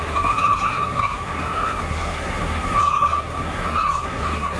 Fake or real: fake